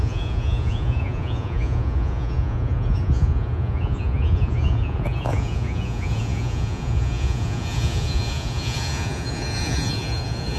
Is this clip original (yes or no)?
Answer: no